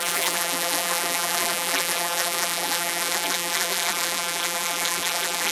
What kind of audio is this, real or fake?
fake